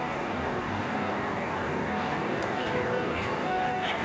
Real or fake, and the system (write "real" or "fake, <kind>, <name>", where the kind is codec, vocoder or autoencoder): fake, codec, DAC